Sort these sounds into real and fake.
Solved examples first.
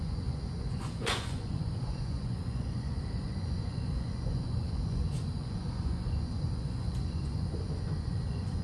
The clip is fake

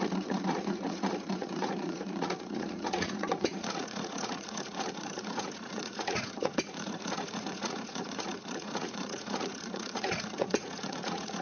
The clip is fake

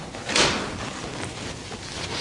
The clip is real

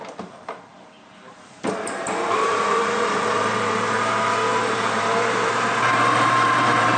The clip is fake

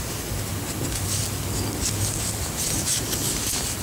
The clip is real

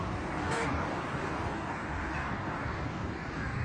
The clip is fake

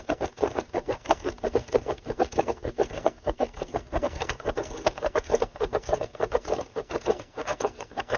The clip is fake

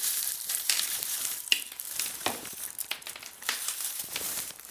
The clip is fake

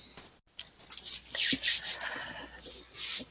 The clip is real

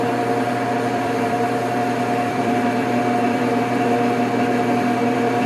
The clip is fake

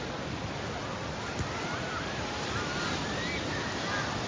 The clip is real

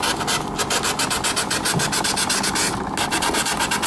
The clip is real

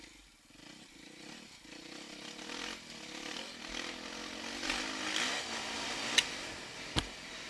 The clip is real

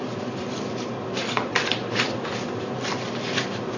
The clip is fake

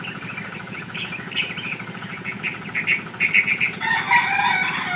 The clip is real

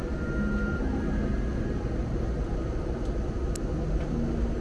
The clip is real